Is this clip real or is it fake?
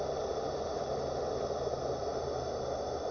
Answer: real